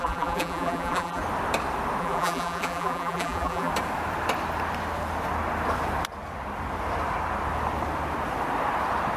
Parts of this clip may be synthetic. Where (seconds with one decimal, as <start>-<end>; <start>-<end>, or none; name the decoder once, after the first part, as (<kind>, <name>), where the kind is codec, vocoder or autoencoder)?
0.0-1.2 (vocoder, BigVGAN v2); 2.0-3.7